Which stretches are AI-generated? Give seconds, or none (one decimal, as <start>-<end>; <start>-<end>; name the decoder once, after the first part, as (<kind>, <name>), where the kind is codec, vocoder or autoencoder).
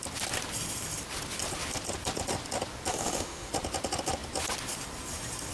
2.9-3.5 (autoencoder, DAC-VAE)